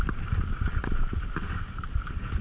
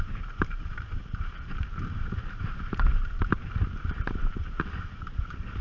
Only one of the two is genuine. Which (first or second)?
first